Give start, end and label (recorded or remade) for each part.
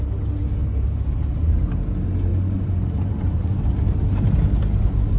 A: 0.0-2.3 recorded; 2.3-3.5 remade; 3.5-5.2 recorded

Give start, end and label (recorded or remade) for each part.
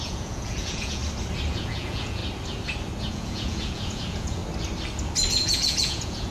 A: 0.0-1.0 remade; 1.0-1.5 recorded; 1.5-2.2 remade; 2.2-3.1 recorded; 3.1-4.4 remade; 4.4-5.3 recorded; 5.3-6.3 remade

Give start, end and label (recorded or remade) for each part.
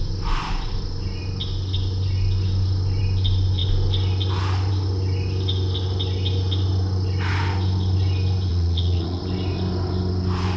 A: 0.0-8.5 recorded; 8.5-9.2 remade; 9.2-10.6 recorded